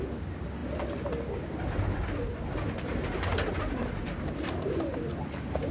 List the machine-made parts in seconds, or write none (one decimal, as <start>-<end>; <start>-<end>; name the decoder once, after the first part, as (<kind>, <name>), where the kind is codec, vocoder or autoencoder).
none